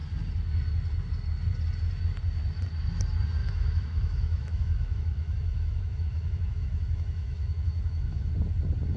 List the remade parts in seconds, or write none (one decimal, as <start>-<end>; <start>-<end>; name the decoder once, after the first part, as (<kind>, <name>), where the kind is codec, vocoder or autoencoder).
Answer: 3.4-8.3 (autoencoder, DAC-VAE)